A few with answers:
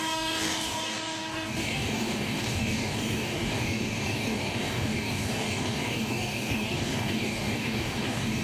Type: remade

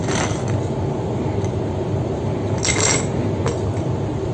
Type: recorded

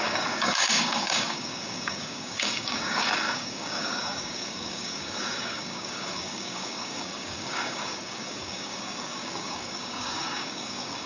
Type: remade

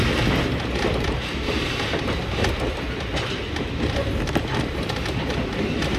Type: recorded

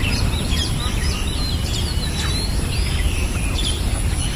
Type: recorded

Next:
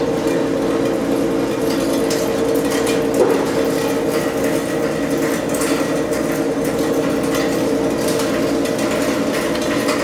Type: recorded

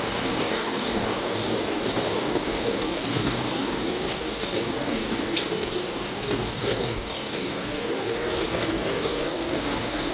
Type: remade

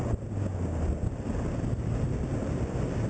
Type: recorded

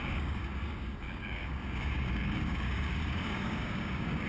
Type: remade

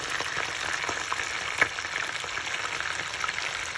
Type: recorded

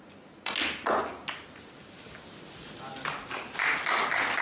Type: recorded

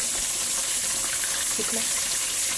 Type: recorded